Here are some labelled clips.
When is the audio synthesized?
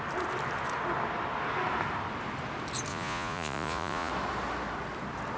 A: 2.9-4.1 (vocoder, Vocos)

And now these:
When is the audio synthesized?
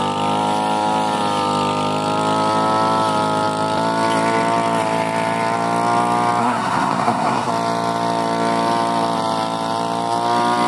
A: 6.4-7.5 (codec, SNAC)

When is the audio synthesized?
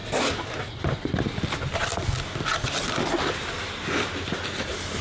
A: none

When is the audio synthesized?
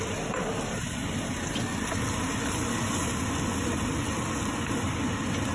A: none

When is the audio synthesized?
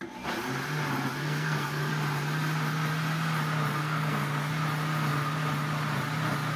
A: 1.2-1.9 (codec, SNAC); 3.8-4.5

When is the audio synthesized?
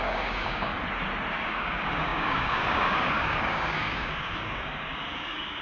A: 0.0-0.7 (codec, DAC); 1.3-5.6